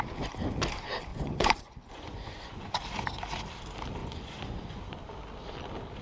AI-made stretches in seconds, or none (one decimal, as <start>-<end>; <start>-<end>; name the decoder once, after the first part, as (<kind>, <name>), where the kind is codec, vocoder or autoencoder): 1.1-2.8 (vocoder, Vocos); 4.0-4.8